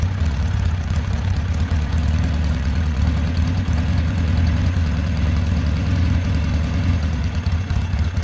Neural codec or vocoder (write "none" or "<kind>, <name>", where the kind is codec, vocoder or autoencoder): vocoder, Vocos